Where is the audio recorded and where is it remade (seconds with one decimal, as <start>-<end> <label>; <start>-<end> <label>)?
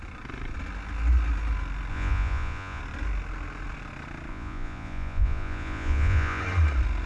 0.0-1.9 recorded; 1.9-2.8 remade; 2.8-4.3 recorded; 4.3-6.4 remade; 6.4-7.1 recorded